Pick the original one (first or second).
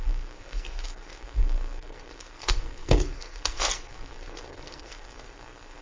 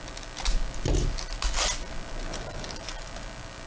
second